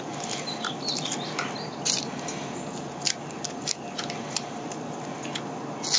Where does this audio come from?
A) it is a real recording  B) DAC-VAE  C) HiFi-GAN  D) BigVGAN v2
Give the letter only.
A